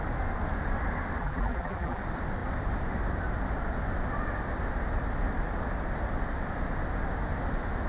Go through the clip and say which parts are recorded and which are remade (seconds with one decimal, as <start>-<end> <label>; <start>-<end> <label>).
0.0-1.2 recorded; 1.2-2.0 remade; 2.0-7.9 recorded